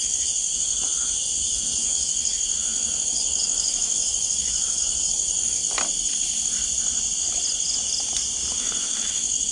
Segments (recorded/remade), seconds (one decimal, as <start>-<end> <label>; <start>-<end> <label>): 0.0-5.6 remade; 5.6-8.5 recorded; 8.5-9.5 remade